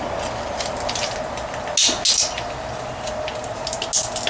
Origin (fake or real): real